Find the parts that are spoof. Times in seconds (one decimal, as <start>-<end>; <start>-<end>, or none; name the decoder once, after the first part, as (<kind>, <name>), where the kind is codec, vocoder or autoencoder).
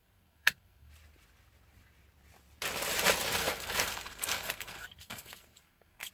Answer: 0.0-0.9 (codec, SNAC); 3.4-6.1